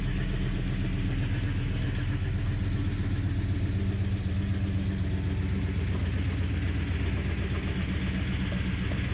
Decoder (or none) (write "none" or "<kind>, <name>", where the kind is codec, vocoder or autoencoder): none